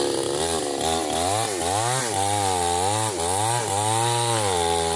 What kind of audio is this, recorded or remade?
recorded